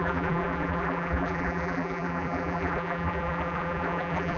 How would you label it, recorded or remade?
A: remade